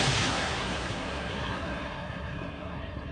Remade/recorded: remade